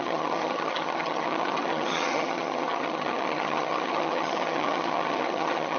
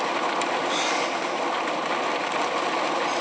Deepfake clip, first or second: first